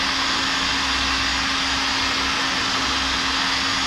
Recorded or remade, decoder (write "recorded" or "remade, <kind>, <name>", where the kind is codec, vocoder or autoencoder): recorded